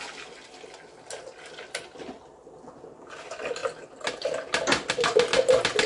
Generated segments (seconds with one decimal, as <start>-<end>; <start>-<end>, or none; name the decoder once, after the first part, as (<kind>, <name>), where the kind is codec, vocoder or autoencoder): none